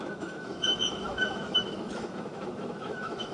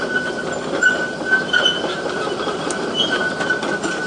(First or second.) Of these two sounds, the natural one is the second